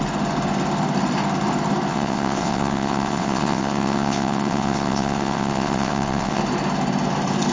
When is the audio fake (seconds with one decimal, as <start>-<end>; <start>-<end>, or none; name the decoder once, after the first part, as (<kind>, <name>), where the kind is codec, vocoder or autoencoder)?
1.9-6.4 (vocoder, WaveNeXt)